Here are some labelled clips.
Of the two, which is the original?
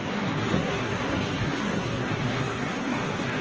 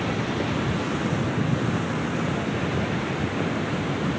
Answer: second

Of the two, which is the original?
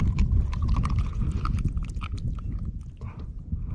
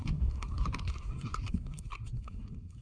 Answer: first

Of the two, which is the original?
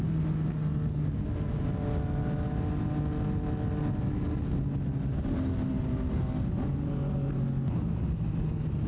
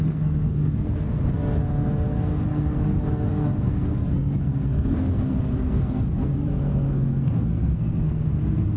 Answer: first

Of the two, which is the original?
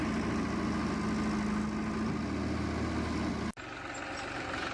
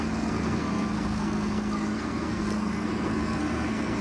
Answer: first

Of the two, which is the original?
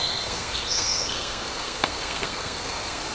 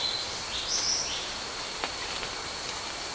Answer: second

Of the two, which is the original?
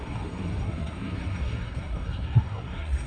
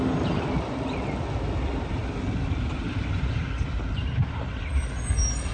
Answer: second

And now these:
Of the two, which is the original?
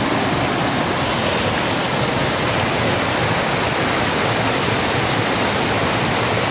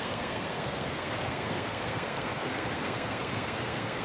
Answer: first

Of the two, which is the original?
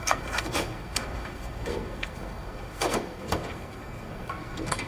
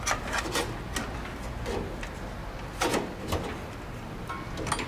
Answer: second